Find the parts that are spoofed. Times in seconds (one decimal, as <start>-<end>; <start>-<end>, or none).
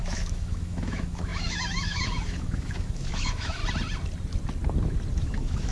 0.0-3.6; 5.2-5.7